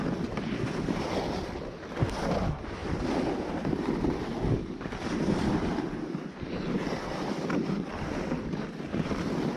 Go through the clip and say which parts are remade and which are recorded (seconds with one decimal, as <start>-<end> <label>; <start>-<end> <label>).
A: 0.0-2.8 recorded; 2.8-6.1 remade; 6.1-9.6 recorded